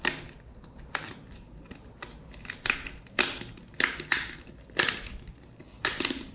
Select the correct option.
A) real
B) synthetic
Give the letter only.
A